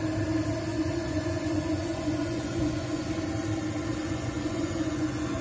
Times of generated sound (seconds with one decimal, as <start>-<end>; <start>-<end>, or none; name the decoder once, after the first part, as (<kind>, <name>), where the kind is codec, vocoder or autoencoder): 0.7-3.1 (vocoder, Vocos); 4.0-5.4